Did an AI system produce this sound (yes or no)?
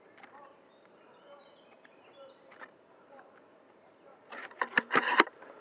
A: yes